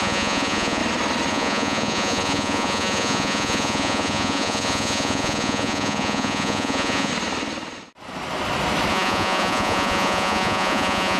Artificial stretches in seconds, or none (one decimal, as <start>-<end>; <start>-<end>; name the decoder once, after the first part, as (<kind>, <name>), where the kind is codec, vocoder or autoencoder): 0.0-0.8 (vocoder, Vocos); 1.3-7.1; 8.9-11.2